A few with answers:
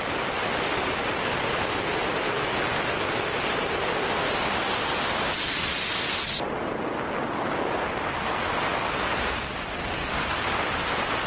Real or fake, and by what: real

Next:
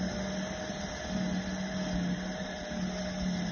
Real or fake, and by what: real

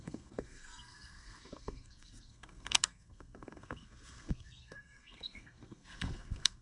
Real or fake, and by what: fake, codec, SNAC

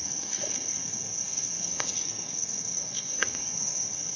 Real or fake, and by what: fake, codec, SNAC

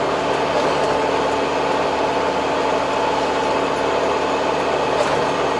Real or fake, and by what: real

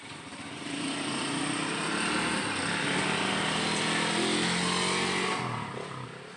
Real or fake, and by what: real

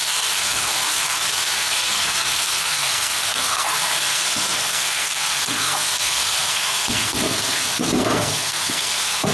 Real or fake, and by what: fake, codec, SNAC